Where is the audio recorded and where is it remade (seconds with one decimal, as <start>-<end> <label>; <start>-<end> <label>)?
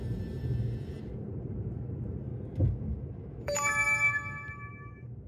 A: 0.0-2.3 remade; 2.3-3.4 recorded; 3.4-5.3 remade